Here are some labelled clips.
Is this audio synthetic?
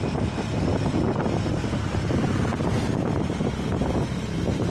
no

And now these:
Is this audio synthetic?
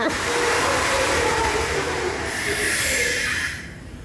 yes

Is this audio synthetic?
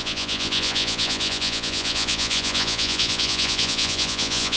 yes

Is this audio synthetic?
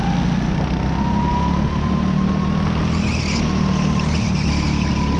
no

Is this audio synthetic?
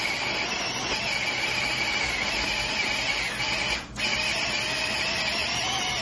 no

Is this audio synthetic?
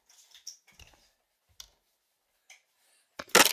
no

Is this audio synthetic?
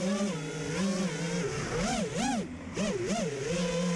no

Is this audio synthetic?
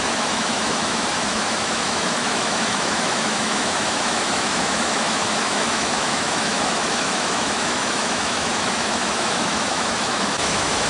yes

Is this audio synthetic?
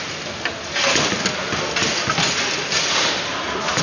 no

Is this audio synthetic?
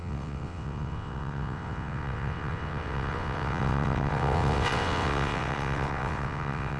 yes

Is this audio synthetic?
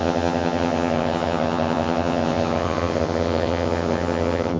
yes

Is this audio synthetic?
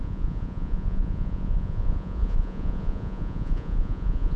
yes